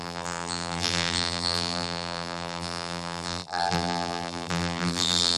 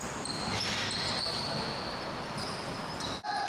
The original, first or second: second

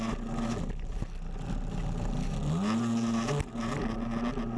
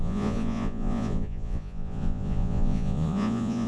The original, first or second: first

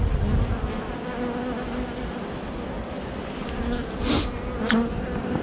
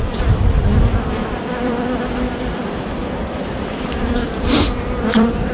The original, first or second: first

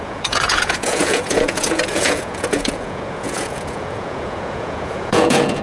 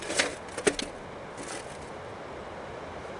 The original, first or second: second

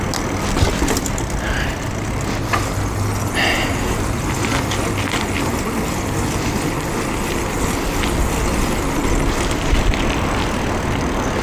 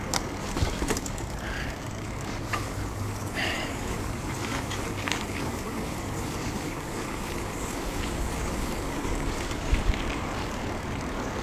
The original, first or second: first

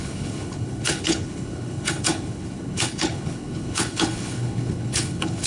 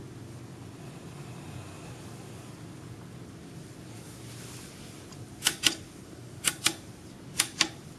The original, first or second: second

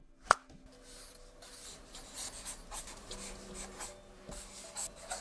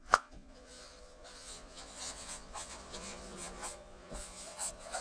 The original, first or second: first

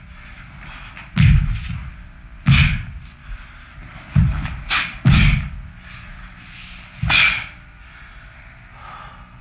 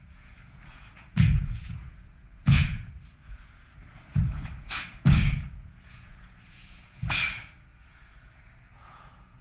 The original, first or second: first